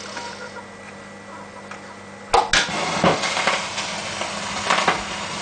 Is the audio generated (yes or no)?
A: no